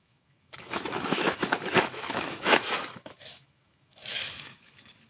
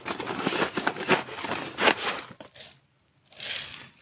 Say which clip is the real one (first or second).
second